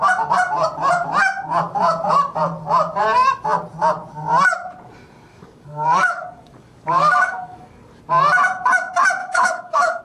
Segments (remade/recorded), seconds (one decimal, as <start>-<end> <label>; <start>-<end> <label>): 0.0-5.3 recorded; 5.3-8.0 remade; 8.0-9.2 recorded; 9.2-10.0 remade